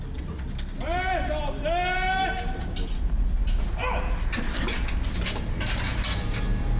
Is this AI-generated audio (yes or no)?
no